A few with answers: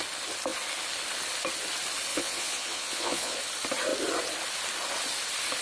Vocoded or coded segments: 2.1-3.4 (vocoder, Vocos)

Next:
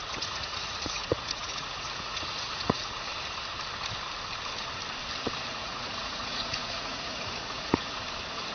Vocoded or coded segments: 0.0-3.1 (vocoder, Vocos); 5.5-8.0

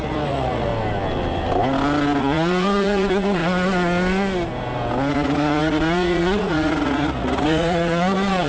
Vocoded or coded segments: 0.0-0.7 (vocoder, Vocos); 2.2-3.4; 5.1-8.5

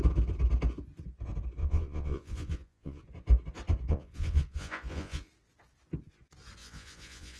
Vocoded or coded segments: 1.6-3.0 (vocoder, Vocos); 3.9-5.3; 6.6-7.4

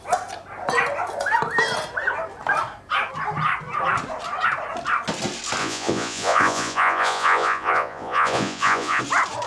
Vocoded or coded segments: 5.6-9.0 (vocoder, Vocos)

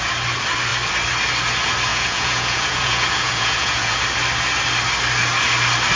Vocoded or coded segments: 1.9-4.0 (vocoder, Vocos)